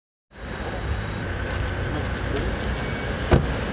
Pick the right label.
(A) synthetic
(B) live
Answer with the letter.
B